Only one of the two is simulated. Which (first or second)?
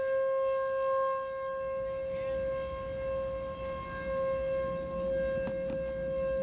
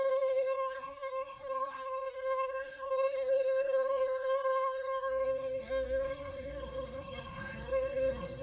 second